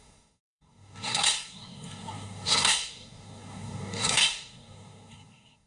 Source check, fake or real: fake